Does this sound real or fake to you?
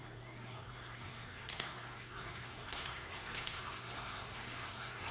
fake